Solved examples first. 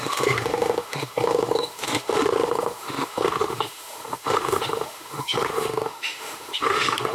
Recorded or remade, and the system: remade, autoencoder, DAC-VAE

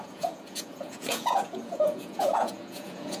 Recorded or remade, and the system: remade, vocoder, Vocos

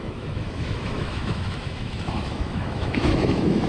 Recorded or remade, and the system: remade, autoencoder, DAC-VAE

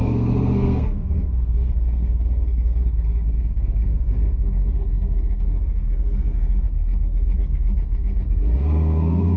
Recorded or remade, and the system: remade, codec, SNAC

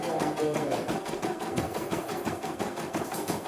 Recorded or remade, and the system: remade, codec, SNAC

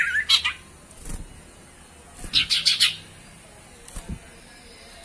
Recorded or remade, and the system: recorded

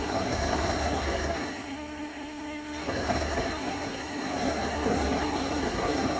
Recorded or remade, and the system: remade, codec, SNAC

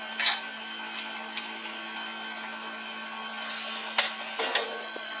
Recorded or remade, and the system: recorded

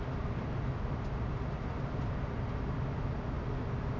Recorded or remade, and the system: recorded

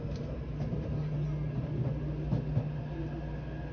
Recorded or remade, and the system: recorded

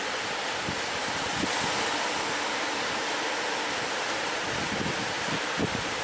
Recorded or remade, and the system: recorded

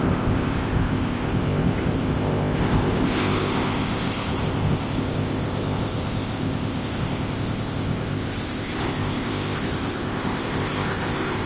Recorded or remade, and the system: remade, codec, ZipCodec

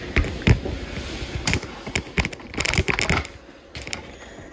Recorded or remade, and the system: recorded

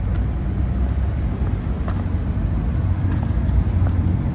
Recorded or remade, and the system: recorded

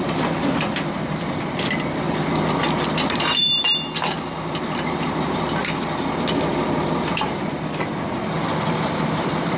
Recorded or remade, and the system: remade, vocoder, BigVGAN v2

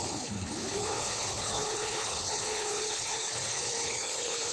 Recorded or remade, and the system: remade, codec, HILCodec